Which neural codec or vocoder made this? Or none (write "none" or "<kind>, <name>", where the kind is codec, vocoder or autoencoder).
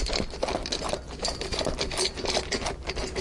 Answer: none